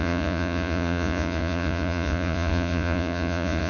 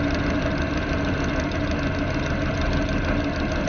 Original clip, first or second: second